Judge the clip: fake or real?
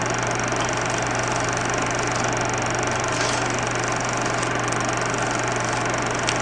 real